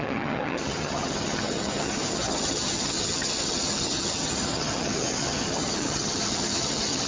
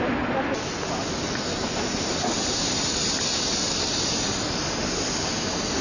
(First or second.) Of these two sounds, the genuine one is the second